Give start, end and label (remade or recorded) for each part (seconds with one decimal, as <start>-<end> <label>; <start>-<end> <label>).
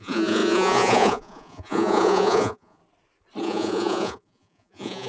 0.0-2.8 remade; 2.8-3.4 recorded; 3.4-5.1 remade